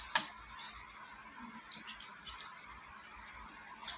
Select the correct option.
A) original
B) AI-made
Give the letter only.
A